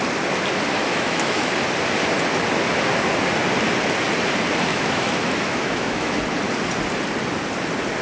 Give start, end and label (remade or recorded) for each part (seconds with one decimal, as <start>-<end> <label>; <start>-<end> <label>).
0.0-0.9 recorded; 0.9-1.5 remade; 1.5-4.7 recorded; 4.7-6.2 remade; 6.2-8.0 recorded

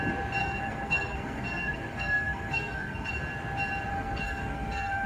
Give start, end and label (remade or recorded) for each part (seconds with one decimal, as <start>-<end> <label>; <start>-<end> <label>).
0.0-0.4 recorded; 0.4-3.1 remade; 3.1-3.9 recorded; 3.9-5.1 remade